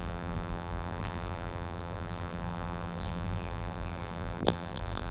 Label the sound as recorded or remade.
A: remade